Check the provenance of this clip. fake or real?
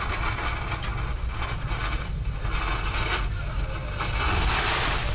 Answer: real